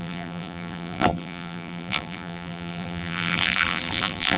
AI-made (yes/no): yes